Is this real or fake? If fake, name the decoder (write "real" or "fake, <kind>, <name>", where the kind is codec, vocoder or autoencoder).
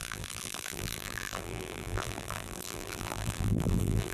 fake, vocoder, BigVGAN v2